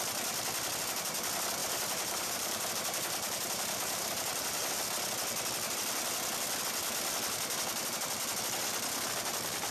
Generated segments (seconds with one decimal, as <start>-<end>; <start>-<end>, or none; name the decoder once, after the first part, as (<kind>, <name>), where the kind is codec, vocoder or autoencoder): 1.6-4.7 (vocoder, BigVGAN v2)